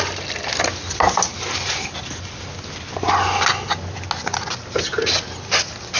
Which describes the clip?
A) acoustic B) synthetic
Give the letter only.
A